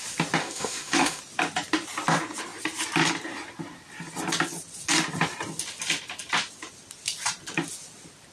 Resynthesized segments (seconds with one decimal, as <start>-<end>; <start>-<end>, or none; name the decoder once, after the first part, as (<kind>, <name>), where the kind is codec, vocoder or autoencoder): 0.4-1.2 (autoencoder, DAC-VAE)